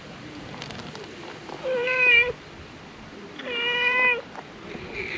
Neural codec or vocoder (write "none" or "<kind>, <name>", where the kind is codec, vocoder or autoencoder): vocoder, BigVGAN v2